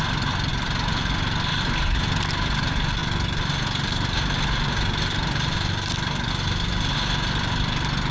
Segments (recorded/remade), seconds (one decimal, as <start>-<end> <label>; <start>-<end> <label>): 0.0-8.1 recorded

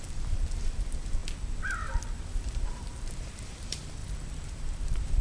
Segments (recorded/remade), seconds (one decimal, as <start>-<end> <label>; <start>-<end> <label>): 0.0-1.2 remade; 1.2-2.2 recorded; 2.2-4.0 remade; 4.0-4.5 recorded; 4.5-5.2 remade

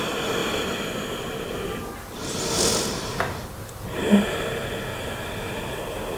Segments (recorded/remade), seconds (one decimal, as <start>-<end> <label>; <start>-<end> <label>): 0.0-6.2 recorded

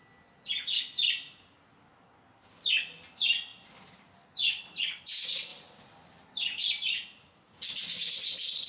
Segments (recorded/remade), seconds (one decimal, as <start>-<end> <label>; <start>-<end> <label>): 0.0-8.7 recorded

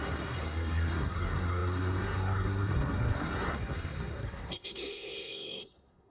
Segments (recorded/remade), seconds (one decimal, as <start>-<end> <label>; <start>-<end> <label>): 0.0-6.1 remade

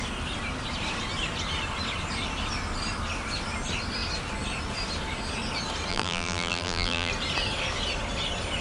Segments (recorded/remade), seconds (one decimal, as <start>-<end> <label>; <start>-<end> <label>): 0.0-5.9 recorded; 5.9-7.1 remade; 7.1-8.6 recorded

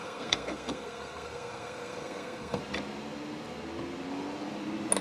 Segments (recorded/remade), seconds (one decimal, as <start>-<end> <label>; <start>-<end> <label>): 0.0-2.6 remade; 2.6-5.0 recorded

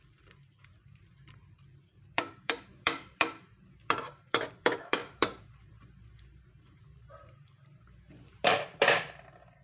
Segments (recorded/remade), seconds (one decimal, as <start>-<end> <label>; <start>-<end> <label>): 0.0-9.6 remade